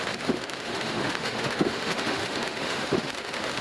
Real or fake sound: fake